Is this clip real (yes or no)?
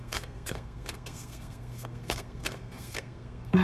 no